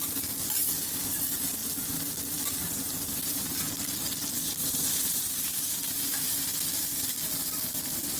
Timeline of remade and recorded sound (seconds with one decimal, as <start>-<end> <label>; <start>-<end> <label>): 0.0-4.6 recorded; 4.6-5.2 remade; 5.2-8.2 recorded